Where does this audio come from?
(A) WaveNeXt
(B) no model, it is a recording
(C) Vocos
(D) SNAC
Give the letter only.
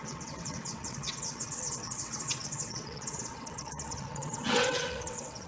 A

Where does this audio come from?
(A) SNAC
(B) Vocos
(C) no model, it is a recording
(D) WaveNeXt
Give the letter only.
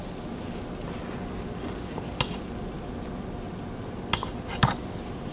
C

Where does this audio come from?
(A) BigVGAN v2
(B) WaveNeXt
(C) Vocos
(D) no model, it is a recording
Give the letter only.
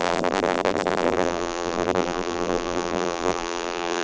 A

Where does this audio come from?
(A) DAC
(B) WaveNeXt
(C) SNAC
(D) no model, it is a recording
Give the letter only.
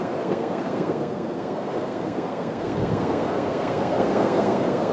C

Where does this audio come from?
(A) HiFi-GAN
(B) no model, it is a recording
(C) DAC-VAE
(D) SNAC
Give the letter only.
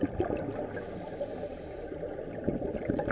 B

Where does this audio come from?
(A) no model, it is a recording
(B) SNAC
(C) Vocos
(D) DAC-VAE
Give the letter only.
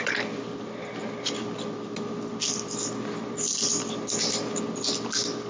A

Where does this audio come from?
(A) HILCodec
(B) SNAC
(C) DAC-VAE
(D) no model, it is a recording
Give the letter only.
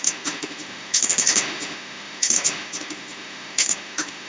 C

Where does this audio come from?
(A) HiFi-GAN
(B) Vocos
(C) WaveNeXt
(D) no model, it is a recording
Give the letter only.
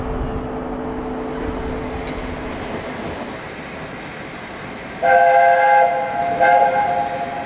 D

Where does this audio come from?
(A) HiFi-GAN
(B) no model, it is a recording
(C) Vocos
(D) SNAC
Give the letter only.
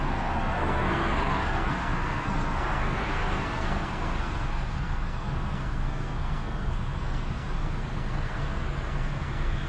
D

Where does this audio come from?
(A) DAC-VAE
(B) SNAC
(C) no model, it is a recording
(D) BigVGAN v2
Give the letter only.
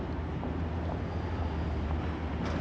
C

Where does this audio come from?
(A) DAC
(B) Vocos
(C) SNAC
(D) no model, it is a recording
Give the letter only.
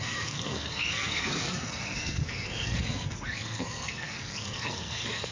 C